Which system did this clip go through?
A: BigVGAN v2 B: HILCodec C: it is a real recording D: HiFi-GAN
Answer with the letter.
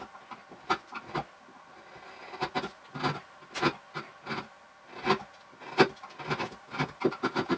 C